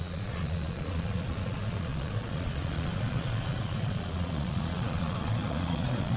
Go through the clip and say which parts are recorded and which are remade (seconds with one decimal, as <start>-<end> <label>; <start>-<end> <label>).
0.0-6.2 remade